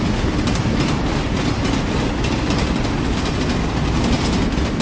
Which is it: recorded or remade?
recorded